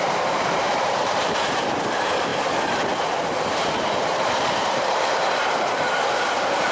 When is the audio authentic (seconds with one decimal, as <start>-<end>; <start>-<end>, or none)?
2.3-3.4